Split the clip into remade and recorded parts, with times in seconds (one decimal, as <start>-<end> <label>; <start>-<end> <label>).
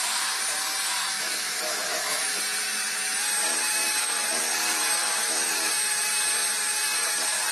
0.0-1.0 recorded; 1.0-2.4 remade; 2.4-4.0 recorded; 4.0-4.5 remade; 4.5-5.0 recorded; 5.0-5.7 remade; 5.7-7.5 recorded